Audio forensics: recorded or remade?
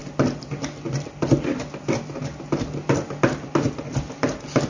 recorded